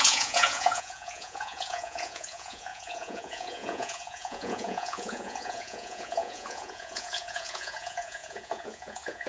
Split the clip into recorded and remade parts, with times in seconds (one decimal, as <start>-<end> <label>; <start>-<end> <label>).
0.0-9.3 remade